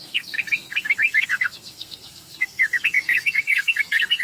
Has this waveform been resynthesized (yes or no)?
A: yes